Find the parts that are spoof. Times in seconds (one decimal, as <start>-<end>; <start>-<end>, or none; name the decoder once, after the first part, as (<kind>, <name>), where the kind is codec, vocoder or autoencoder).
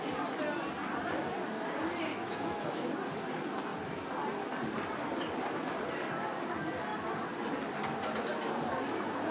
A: 2.1-2.9 (autoencoder, DAC-VAE)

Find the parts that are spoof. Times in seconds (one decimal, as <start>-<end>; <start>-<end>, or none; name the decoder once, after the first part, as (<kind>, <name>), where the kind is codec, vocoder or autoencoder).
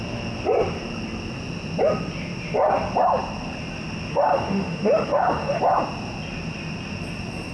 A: 4.1-5.6 (autoencoder, DAC-VAE)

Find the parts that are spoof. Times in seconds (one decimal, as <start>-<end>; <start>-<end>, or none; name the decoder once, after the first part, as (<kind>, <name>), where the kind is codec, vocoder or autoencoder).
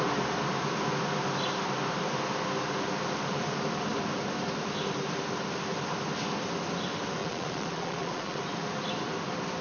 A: 7.2-8.4 (vocoder, Vocos)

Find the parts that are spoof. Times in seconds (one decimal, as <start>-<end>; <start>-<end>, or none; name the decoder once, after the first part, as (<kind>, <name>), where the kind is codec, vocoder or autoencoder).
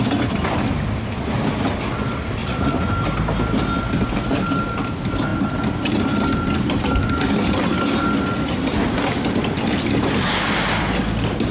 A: 2.4-2.9 (vocoder, Vocos)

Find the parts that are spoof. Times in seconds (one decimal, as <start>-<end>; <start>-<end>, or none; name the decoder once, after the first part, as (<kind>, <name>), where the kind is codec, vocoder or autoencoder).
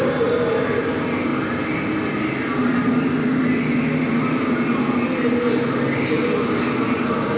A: none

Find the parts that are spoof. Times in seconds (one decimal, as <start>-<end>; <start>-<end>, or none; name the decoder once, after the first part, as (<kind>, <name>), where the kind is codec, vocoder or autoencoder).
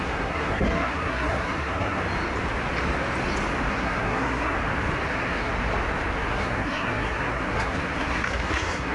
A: 0.0-2.0 (codec, SNAC); 3.7-4.6; 5.1-5.5; 6.3-8.9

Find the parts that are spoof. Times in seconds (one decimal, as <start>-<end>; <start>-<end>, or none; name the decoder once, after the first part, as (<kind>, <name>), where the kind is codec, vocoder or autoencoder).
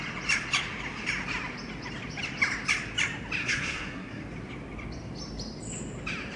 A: 3.4-4.2 (codec, SNAC)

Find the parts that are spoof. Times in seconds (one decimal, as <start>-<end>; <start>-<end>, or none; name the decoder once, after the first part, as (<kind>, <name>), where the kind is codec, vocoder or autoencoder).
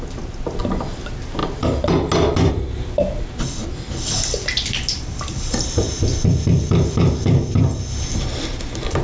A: none